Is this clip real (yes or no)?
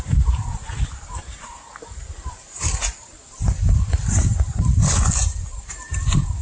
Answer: no